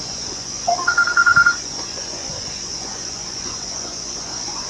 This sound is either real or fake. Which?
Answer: fake